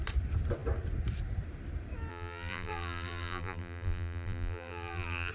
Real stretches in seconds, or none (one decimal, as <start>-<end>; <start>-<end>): 0.0-2.1

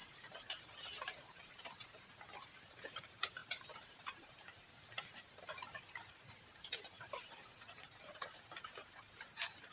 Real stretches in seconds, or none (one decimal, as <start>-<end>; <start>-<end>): none

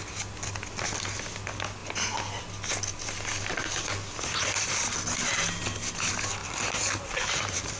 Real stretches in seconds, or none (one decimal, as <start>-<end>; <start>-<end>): 0.0-6.4

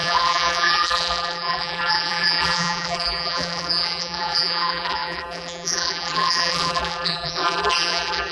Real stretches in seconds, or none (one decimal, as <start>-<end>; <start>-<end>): none

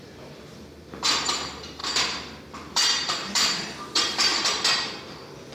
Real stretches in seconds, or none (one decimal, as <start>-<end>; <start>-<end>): 4.3-5.1

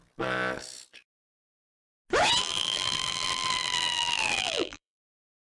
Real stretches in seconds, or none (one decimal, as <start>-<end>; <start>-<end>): 0.0-2.4